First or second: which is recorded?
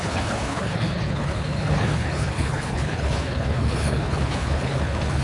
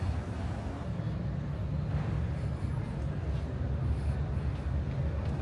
second